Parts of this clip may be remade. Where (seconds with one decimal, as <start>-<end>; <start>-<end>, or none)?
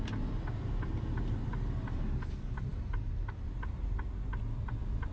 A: none